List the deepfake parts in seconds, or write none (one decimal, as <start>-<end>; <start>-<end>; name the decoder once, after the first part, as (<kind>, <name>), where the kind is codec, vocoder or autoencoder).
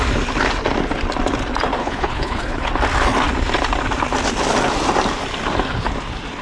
1.8-2.7 (codec, HILCodec)